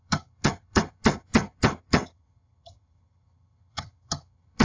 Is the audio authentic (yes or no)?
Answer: no